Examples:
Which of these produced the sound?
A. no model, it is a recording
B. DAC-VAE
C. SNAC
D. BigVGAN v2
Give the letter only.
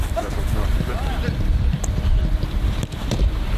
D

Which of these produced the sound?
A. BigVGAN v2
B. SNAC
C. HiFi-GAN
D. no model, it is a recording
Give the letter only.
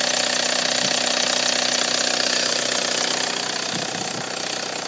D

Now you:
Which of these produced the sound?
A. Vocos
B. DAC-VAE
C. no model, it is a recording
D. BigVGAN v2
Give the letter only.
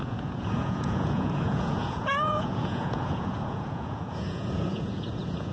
A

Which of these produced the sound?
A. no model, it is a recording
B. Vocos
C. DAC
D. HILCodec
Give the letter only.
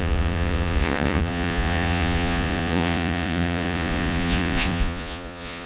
B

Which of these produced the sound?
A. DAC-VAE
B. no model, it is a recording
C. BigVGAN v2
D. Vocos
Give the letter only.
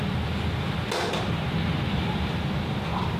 B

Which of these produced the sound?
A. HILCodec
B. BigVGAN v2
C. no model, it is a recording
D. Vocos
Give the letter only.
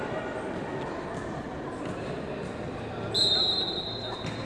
C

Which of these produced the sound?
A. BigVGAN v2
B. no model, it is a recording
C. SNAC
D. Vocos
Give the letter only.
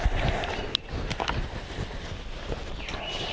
B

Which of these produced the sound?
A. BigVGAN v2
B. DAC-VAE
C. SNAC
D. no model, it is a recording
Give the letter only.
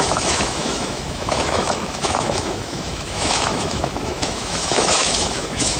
B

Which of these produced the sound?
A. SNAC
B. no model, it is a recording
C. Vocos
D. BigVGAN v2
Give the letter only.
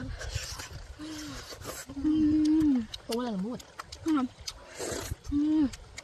B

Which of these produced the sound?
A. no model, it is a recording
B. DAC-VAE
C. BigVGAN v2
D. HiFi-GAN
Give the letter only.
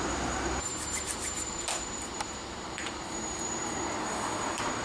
C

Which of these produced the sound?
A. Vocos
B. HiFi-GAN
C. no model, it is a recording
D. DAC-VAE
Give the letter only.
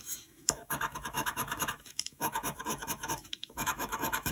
D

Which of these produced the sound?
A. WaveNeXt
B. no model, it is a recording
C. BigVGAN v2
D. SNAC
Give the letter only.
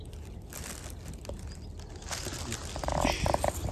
B